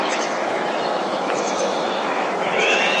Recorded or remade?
remade